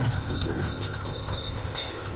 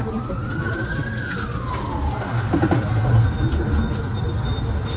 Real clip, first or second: second